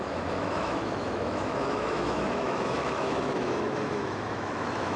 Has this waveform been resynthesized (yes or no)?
yes